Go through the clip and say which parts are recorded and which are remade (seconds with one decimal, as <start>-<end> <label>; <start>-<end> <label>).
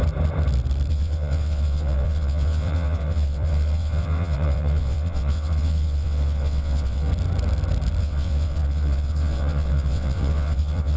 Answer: 0.0-0.9 recorded; 0.9-7.1 remade; 7.1-8.0 recorded; 8.0-11.0 remade